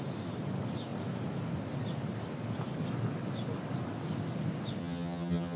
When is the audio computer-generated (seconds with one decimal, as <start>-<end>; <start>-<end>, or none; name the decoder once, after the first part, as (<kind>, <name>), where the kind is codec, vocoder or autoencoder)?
4.8-5.6 (vocoder, HiFi-GAN)